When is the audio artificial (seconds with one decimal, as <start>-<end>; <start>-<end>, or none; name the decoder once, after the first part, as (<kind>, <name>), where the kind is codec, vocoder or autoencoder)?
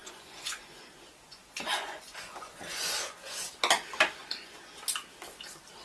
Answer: 0.0-3.5 (vocoder, Vocos); 4.2-4.8